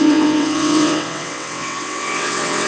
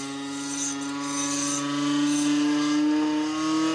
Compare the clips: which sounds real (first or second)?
second